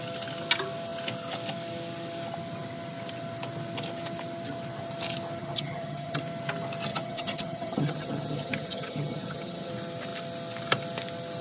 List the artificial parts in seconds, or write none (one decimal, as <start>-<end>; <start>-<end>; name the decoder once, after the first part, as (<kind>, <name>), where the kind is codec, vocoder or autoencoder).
5.4-6.2 (vocoder, HiFi-GAN); 6.9-9.7